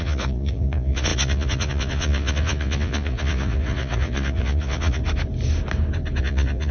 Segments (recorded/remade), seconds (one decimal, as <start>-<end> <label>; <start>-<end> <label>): 0.0-5.0 remade; 5.0-6.2 recorded; 6.2-6.7 remade